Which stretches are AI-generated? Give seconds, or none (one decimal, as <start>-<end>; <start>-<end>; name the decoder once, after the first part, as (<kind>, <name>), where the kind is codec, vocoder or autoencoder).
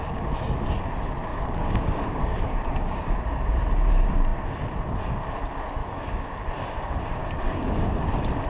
1.3-3.5 (codec, DAC); 5.8-6.5; 7.2-7.9